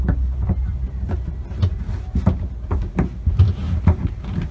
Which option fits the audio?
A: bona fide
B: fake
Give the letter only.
A